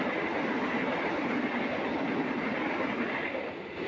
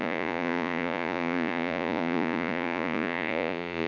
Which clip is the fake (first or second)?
second